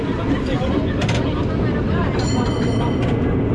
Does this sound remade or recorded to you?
recorded